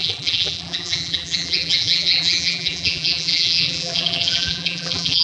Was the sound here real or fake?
fake